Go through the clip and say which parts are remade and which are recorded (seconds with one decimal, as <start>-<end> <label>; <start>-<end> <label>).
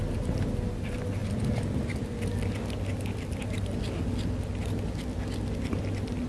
0.0-6.3 recorded